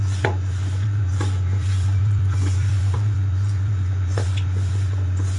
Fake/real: fake